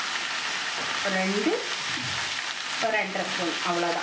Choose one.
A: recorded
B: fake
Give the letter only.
A